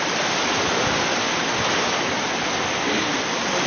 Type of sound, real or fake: real